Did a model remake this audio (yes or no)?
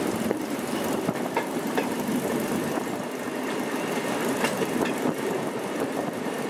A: yes